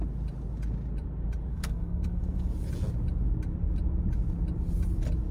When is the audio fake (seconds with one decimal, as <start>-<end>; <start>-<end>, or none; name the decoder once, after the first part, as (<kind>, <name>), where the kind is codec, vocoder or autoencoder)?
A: 1.5-2.5 (codec, SNAC)